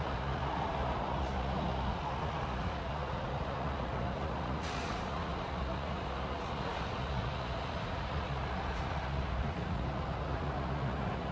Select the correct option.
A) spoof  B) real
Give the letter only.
A